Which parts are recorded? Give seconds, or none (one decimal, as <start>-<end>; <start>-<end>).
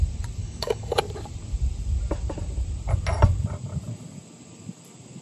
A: 0.0-0.4; 1.0-5.2